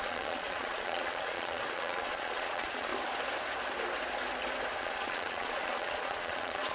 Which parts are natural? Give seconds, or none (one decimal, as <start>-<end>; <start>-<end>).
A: 2.9-4.8